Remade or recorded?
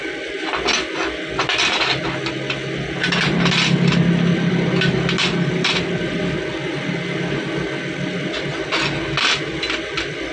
recorded